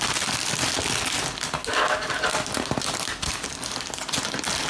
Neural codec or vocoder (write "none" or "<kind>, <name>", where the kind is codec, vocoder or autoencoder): none